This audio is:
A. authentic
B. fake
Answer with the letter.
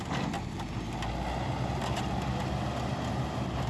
A